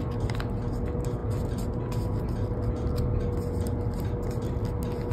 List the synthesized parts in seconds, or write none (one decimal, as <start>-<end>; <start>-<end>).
none